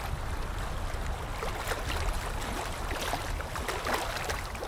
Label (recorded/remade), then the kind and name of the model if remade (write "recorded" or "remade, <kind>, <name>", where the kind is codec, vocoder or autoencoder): recorded